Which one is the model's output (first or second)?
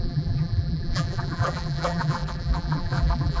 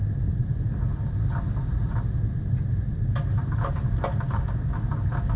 first